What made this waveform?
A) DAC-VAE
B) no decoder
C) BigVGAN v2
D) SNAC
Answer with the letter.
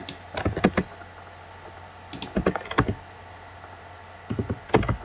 B